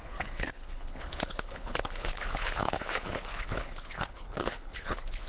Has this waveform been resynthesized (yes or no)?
yes